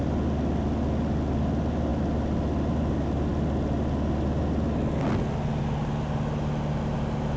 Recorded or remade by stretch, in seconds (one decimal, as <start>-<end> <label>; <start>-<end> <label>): 0.0-7.4 recorded